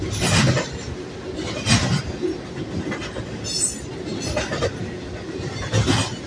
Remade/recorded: recorded